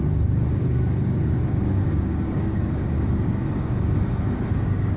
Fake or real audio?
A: fake